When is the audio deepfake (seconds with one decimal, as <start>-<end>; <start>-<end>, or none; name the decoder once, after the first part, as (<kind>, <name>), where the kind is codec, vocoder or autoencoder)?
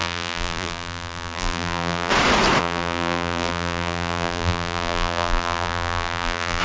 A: 0.0-2.1 (vocoder, BigVGAN v2); 2.6-6.6